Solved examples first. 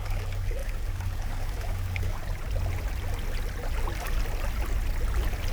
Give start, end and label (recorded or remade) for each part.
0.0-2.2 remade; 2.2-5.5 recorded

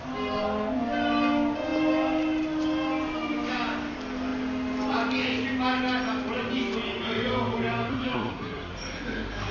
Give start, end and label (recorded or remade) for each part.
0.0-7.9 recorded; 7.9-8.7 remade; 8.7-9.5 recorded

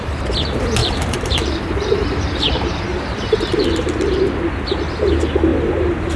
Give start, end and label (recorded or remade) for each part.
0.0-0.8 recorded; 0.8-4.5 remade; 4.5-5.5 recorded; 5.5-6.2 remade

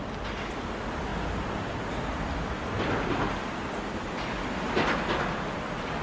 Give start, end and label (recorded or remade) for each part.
0.0-6.0 recorded